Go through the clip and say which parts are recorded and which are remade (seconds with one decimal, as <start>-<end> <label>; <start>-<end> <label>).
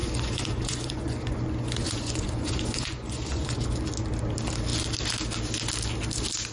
0.0-3.9 remade; 3.9-6.5 recorded